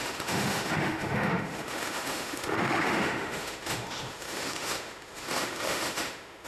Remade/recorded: remade